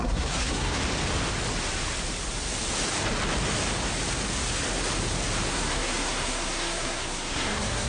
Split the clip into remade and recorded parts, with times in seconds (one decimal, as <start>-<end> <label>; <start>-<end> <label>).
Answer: 0.0-0.8 remade; 0.8-5.5 recorded; 5.5-7.9 remade